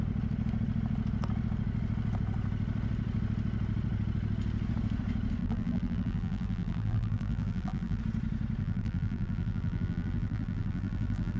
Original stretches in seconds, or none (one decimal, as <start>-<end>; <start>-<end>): 0.0-5.4; 8.0-8.6